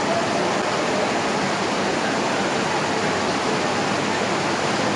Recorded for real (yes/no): yes